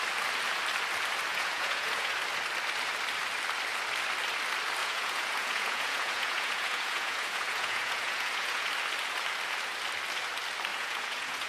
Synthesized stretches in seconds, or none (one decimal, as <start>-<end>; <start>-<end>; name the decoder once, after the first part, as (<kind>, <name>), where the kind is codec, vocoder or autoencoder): 1.3-2.1 (vocoder, Vocos); 4.8-8.7; 10.7-11.5